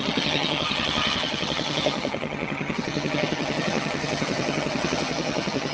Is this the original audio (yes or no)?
no